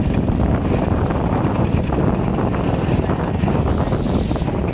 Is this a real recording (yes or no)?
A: yes